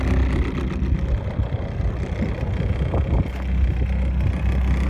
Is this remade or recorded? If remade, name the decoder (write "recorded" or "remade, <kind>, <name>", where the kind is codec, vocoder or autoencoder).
recorded